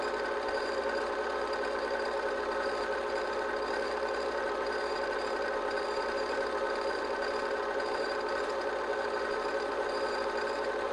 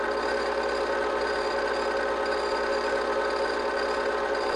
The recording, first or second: second